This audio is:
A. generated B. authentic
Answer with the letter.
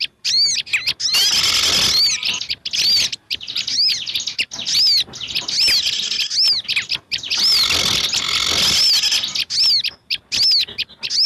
B